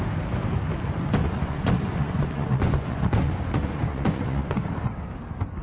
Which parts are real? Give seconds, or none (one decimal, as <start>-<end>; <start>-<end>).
0.0-1.2; 4.6-5.6